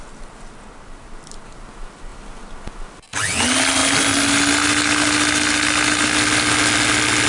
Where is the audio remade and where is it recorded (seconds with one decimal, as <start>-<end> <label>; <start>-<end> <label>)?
0.0-7.3 recorded